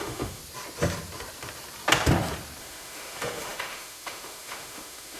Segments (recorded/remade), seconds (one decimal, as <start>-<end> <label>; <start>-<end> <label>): 0.0-0.4 remade; 0.4-2.6 recorded; 2.6-5.2 remade

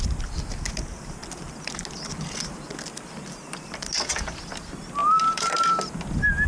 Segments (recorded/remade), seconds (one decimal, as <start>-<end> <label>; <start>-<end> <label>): 0.0-5.0 recorded; 5.0-5.9 remade; 5.9-6.5 recorded